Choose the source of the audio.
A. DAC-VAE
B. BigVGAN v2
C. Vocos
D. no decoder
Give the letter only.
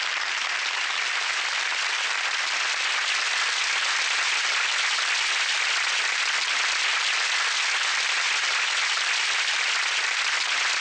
D